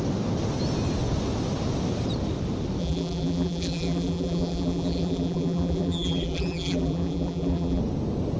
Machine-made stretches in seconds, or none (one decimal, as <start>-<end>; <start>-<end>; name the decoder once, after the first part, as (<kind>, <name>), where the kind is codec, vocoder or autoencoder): 2.8-7.8 (vocoder, BigVGAN v2)